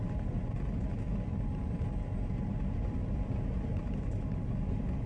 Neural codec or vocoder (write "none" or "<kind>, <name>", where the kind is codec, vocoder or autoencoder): none